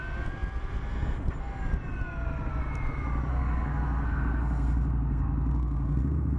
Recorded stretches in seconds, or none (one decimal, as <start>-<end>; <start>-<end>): 0.0-3.3

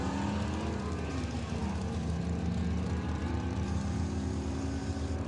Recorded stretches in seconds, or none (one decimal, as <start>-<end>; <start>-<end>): 0.0-5.3

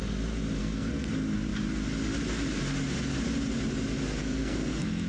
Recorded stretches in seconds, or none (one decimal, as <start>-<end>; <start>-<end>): 0.0-0.6; 1.1-4.2